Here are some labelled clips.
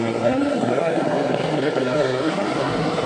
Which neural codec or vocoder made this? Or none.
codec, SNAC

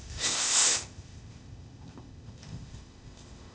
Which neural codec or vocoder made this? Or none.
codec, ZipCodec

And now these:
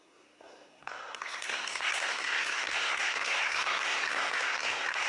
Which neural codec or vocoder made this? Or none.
codec, SNAC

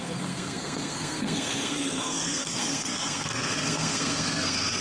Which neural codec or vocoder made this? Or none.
codec, SNAC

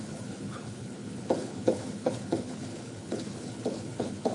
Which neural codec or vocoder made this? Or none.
codec, HILCodec